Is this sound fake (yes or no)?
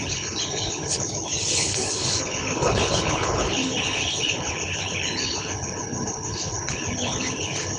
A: yes